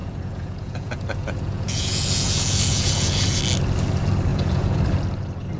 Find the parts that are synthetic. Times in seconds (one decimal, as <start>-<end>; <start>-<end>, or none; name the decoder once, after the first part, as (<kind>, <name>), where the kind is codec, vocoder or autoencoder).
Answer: 0.0-3.4 (vocoder, Vocos); 4.3-4.8